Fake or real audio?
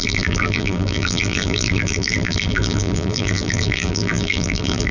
fake